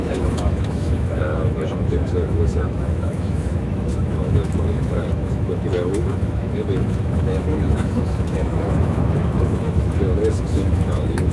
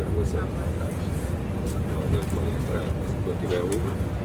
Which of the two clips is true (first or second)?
second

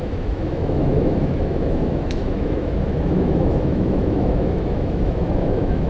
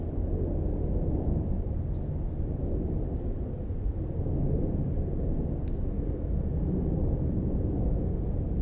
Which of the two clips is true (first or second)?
second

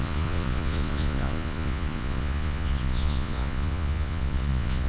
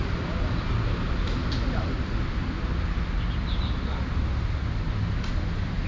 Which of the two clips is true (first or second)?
second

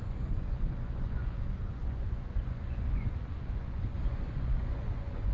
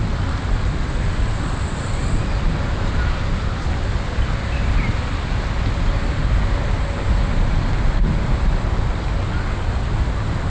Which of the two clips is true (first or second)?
second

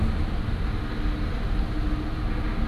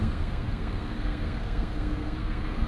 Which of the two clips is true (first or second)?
first